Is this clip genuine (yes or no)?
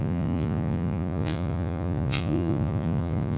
no